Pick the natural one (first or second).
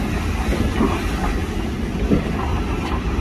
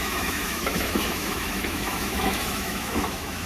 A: first